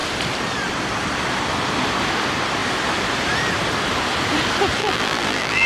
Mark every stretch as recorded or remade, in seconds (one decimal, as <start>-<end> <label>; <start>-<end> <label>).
0.0-4.8 recorded; 4.8-5.7 remade